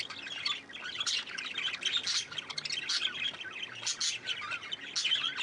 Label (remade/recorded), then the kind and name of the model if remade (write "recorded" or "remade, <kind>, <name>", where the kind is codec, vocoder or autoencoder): recorded